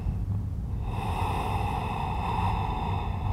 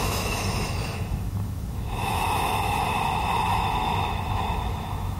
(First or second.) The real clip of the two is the first